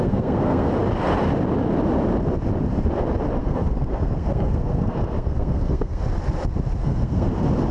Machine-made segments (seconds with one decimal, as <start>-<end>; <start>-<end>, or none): 0.0-0.7; 3.4-6.0; 6.8-7.3